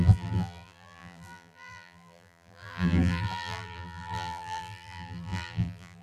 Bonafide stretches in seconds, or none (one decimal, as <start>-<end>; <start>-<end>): none